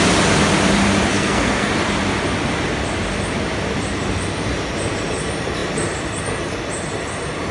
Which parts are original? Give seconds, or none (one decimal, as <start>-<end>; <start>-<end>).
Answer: 0.0-1.1; 1.7-7.5